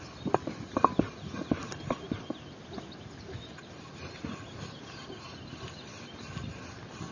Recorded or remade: recorded